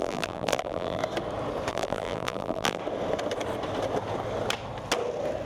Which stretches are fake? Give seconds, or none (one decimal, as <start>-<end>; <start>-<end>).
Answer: 0.0-1.0; 1.7-2.8